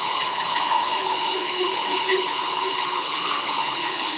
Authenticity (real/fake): fake